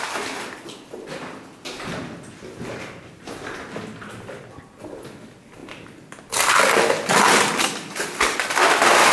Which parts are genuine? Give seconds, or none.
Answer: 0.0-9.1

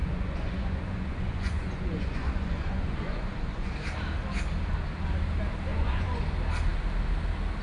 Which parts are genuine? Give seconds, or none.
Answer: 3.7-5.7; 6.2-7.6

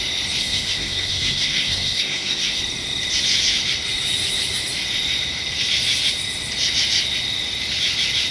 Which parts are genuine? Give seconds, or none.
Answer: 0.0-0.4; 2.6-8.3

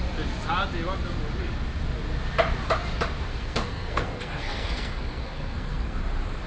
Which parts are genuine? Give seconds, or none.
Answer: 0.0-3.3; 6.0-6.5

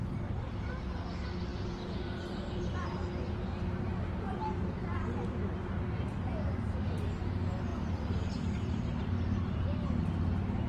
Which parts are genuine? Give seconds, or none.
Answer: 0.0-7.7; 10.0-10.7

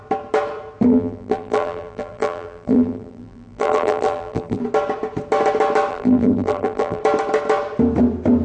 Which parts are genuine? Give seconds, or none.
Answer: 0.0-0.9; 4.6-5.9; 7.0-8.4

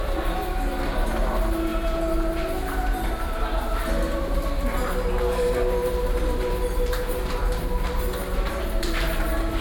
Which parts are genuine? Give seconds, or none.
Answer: 0.0-9.6

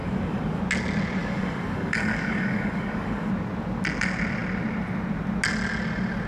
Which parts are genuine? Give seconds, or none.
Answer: 0.6-1.2; 3.3-6.3